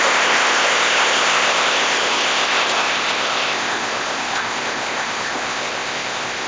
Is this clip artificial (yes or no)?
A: yes